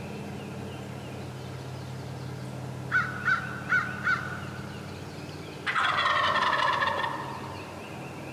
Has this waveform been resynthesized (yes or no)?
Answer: no